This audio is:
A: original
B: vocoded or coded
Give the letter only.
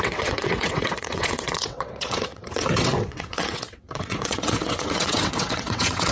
B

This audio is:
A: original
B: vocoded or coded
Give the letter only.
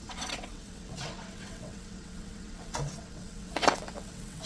B